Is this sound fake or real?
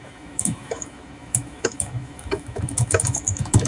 fake